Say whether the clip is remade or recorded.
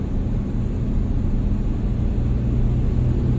recorded